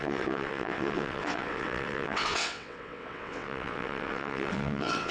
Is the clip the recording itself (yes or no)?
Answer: no